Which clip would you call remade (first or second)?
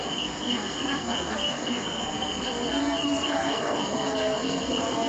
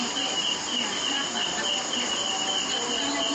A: first